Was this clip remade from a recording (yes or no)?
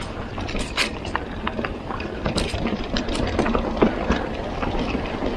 yes